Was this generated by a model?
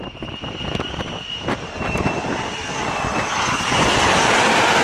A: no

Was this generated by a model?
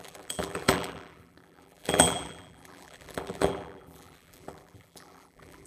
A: yes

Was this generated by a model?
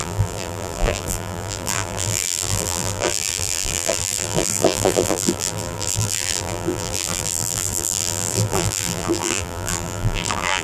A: yes